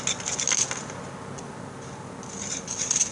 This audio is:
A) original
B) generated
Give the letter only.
A